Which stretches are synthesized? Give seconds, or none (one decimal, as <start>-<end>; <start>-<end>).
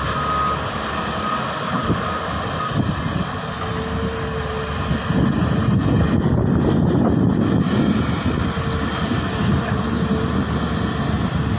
none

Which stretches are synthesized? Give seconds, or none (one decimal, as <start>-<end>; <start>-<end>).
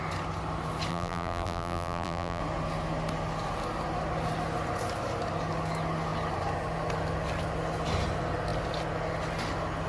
0.9-2.4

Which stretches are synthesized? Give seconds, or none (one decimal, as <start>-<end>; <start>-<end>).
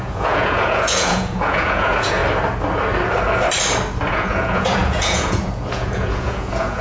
0.0-2.2; 4.1-6.8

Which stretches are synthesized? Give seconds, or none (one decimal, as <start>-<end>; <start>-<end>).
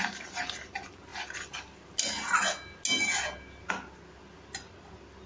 none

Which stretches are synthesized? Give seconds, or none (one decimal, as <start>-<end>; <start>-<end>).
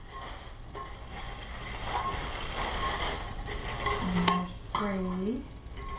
1.0-2.7; 3.6-4.7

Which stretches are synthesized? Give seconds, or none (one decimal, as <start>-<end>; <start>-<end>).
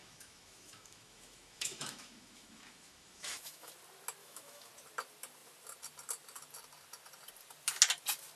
0.0-3.7; 4.2-4.7